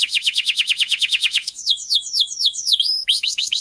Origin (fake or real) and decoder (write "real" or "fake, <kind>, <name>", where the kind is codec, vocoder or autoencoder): fake, autoencoder, DAC-VAE